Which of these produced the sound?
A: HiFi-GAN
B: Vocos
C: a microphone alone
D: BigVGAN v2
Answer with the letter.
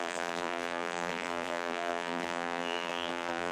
D